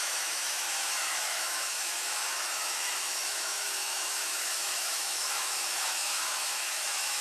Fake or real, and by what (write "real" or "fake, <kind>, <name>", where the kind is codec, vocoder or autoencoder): fake, autoencoder, DAC-VAE